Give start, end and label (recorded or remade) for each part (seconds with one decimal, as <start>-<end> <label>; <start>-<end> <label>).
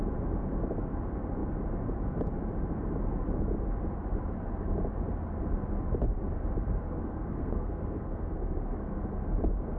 0.0-7.1 recorded; 7.1-9.0 remade; 9.0-9.8 recorded